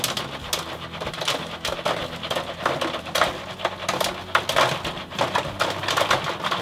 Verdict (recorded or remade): recorded